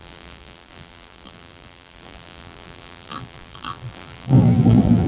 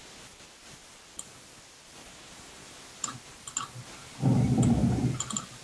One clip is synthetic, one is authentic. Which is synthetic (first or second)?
first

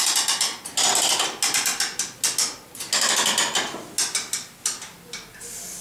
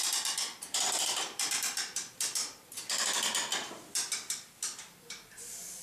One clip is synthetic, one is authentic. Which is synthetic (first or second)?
second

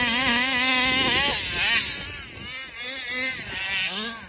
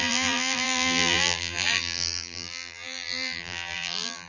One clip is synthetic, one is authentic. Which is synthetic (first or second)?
second